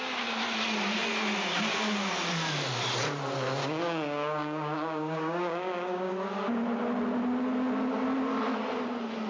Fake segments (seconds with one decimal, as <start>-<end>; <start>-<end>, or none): 3.6-6.1